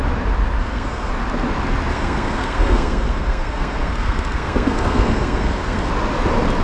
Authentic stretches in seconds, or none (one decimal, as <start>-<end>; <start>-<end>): 0.0-0.6; 1.1-1.9; 5.9-6.6